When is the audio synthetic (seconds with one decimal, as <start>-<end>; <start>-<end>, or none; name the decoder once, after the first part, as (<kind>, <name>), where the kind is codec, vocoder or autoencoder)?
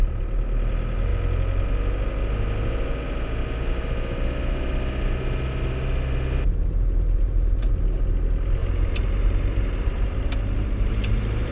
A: 8.6-11.5 (vocoder, BigVGAN v2)